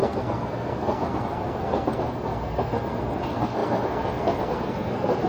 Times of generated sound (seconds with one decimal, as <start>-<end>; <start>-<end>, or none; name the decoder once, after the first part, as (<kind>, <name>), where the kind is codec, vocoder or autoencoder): 0.0-5.3 (codec, SNAC)